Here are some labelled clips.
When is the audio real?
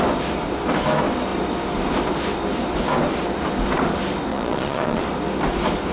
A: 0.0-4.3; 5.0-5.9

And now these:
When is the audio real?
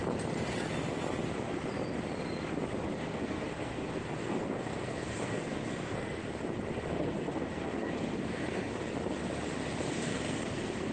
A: 0.0-2.9; 6.2-6.9; 8.7-10.0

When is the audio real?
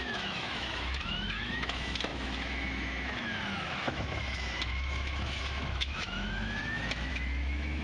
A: none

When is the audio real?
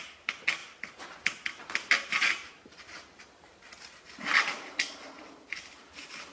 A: 0.0-6.3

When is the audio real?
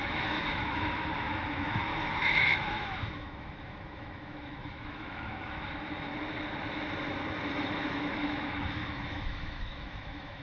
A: 6.1-7.5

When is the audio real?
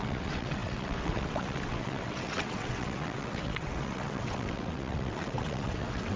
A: none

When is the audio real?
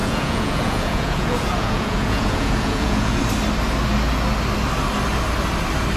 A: 3.2-6.0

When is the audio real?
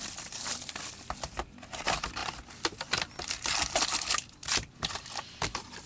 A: 0.0-5.9